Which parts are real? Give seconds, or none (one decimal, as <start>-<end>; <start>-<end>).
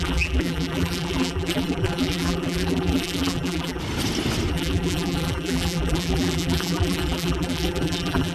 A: 3.8-4.5